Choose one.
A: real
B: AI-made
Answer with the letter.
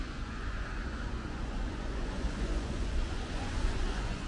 B